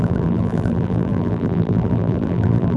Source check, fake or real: fake